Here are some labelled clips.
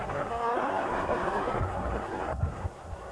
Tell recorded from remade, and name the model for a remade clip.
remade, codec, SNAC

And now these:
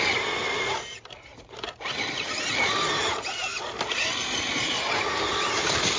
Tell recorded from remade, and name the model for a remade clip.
recorded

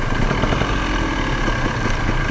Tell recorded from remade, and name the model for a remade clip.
recorded